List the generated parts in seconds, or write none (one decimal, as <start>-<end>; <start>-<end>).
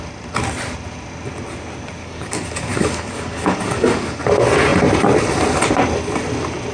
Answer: 2.0-4.2